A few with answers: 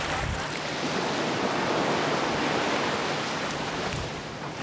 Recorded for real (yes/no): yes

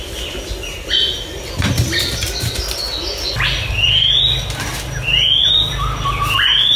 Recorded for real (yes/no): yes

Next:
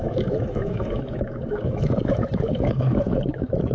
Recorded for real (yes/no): no